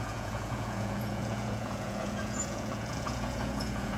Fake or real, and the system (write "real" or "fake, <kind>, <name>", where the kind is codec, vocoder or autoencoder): fake, vocoder, Vocos